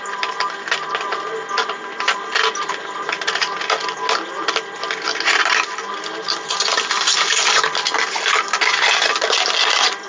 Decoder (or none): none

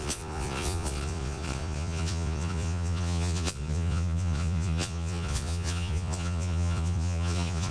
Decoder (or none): vocoder, Vocos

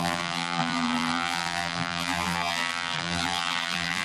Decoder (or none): vocoder, BigVGAN v2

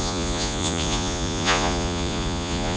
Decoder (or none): vocoder, Vocos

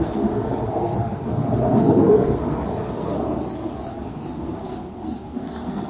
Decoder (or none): codec, SNAC